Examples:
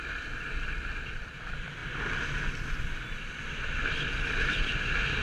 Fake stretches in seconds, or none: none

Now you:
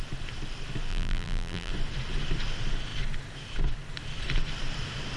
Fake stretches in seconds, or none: 0.9-1.7 (vocoder, BigVGAN v2)

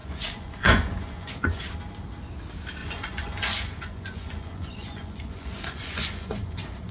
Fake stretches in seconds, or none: 0.0-1.6 (vocoder, Vocos); 2.8-6.9

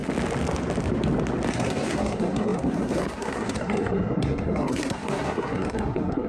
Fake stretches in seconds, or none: 1.5-6.3 (codec, SNAC)

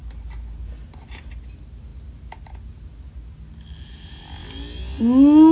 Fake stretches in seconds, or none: none

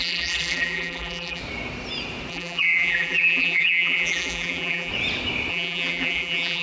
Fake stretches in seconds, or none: 0.0-1.4 (vocoder, BigVGAN v2); 2.3-4.9; 5.5-6.6

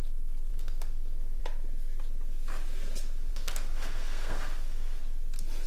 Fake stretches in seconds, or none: 0.5-1.4 (codec, SNAC); 3.3-5.0

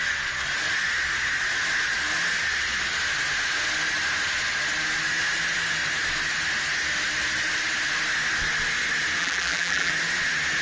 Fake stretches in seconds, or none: 9.2-9.9 (vocoder, BigVGAN v2)